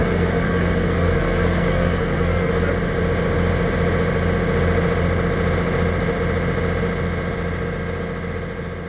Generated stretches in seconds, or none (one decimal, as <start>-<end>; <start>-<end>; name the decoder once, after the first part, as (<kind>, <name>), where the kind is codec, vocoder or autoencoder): 0.0-2.5 (codec, SNAC)